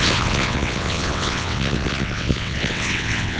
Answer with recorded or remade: remade